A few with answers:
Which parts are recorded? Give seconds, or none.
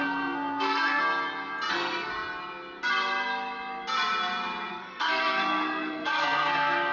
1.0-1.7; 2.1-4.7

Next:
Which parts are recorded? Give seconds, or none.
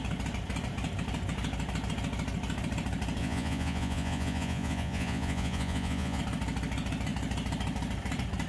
0.0-3.2; 6.2-8.5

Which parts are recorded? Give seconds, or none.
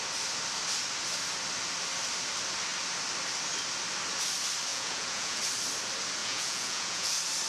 0.0-4.7; 5.4-6.2; 7.1-7.5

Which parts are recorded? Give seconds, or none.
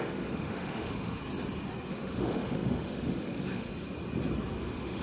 1.2-1.9; 3.7-4.6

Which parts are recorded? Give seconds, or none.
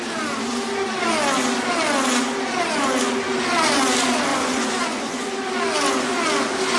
0.0-4.3; 5.4-6.8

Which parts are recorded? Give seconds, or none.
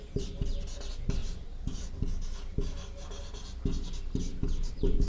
0.0-1.2; 1.8-4.3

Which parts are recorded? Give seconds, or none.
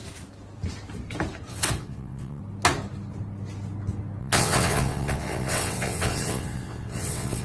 0.0-1.5; 2.4-4.2